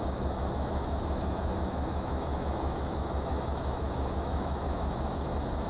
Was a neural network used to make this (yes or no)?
yes